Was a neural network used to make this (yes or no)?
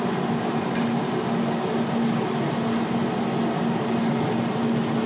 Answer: no